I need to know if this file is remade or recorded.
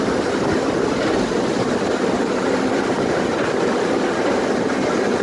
recorded